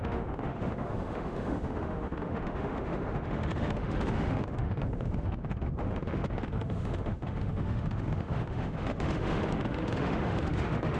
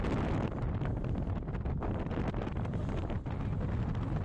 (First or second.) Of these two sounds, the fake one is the first